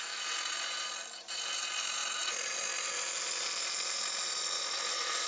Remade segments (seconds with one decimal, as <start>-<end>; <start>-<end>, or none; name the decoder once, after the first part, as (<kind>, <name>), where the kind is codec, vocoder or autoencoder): none